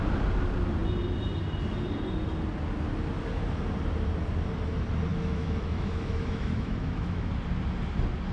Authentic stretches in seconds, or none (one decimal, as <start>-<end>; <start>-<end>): 0.0-5.1; 7.3-8.3